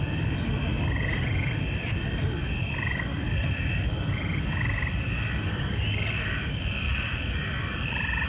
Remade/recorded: recorded